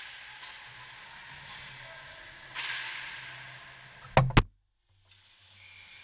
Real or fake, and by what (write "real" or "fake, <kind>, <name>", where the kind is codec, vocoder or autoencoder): real